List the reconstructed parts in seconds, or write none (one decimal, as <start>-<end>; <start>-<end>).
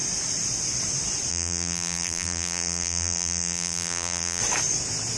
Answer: 1.3-4.4